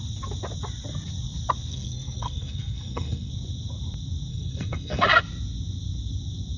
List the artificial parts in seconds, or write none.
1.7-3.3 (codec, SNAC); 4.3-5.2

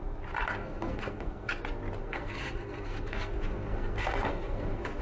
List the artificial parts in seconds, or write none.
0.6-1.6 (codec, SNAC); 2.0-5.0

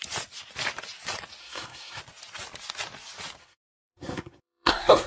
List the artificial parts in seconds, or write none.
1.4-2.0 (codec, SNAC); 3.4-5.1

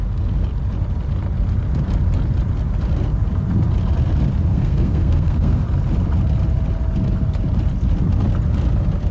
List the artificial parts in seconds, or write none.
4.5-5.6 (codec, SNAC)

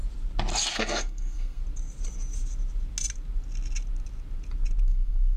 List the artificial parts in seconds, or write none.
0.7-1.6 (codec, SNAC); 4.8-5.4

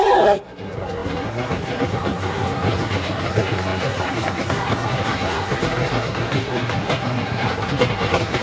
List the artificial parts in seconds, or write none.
0.0-8.4 (codec, SNAC)